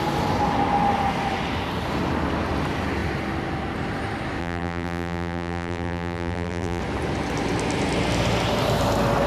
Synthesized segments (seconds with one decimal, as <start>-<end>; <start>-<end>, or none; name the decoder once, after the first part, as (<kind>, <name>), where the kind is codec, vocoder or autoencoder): 4.4-6.8 (vocoder, BigVGAN v2)